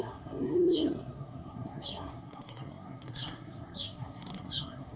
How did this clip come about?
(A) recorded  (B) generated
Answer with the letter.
B